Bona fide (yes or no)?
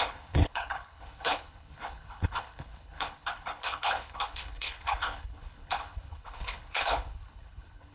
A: no